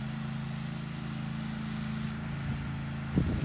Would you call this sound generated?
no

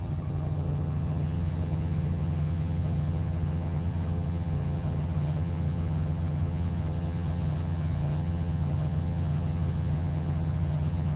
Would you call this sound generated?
yes